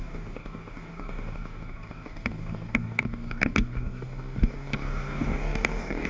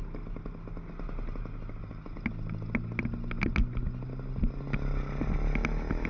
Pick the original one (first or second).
second